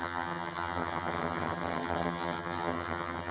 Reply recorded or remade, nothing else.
remade